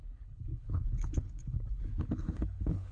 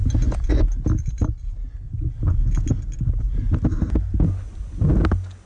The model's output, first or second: first